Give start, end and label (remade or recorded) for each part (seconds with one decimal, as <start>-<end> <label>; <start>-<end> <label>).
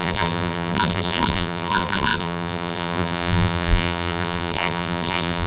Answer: 0.0-5.5 remade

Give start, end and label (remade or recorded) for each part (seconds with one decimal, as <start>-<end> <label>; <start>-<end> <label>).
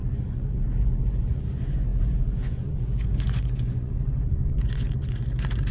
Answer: 0.0-5.7 remade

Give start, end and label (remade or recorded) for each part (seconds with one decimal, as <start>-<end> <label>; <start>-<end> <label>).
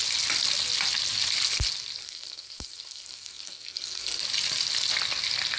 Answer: 0.0-2.0 recorded; 2.0-4.2 remade; 4.2-5.6 recorded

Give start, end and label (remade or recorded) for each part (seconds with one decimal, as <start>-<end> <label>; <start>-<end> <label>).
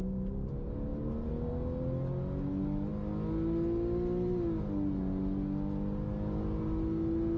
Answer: 0.0-7.4 recorded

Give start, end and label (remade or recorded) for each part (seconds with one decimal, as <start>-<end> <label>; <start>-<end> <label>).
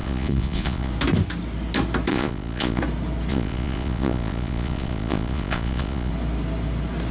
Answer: 0.0-0.9 remade; 0.9-2.1 recorded; 2.1-2.8 remade; 2.8-3.3 recorded; 3.3-6.1 remade; 6.1-7.1 recorded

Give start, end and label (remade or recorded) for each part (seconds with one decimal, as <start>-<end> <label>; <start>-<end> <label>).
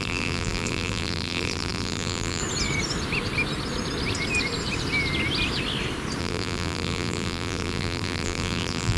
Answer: 0.0-2.4 remade; 2.4-6.2 recorded; 6.2-9.0 remade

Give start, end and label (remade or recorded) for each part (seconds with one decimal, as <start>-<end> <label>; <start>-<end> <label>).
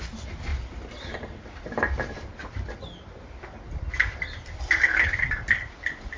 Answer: 0.0-6.2 recorded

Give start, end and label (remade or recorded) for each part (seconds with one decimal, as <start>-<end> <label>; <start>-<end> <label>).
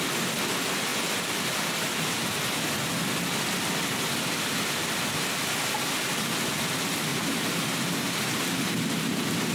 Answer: 0.0-7.1 recorded; 7.1-8.4 remade; 8.4-9.5 recorded